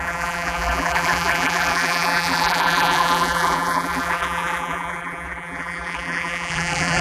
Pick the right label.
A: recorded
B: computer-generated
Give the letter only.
B